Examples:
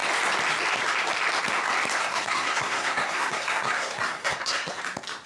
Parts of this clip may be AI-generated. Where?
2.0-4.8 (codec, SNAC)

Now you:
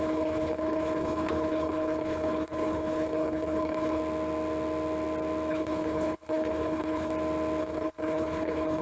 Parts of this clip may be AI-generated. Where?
0.0-4.0 (codec, HILCodec); 5.5-7.1; 7.6-8.8

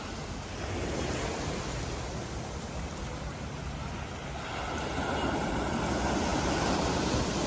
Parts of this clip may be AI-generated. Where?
6.3-7.5 (vocoder, BigVGAN v2)

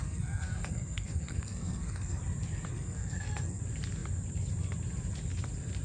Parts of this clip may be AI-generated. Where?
0.0-2.2 (codec, SNAC); 2.7-3.6

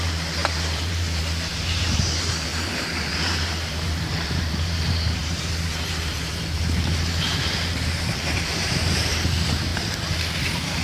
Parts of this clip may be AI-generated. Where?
0.0-9.7 (vocoder, BigVGAN v2); 10.4-10.8

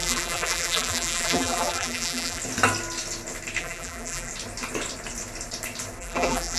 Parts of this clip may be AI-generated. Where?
0.0-2.4 (vocoder, BigVGAN v2); 3.6-4.3; 6.0-6.6

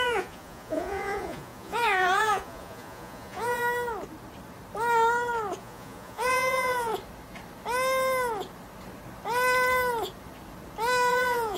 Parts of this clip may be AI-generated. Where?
0.0-3.6 (vocoder, Vocos); 5.6-6.9; 11.1-11.6

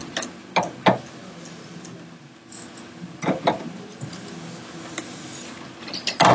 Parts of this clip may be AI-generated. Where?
none